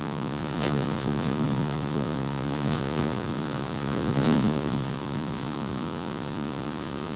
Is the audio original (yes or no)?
no